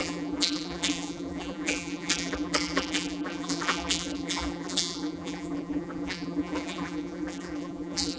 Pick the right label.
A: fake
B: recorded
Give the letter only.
A